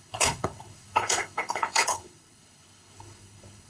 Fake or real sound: fake